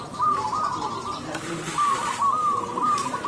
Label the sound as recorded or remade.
recorded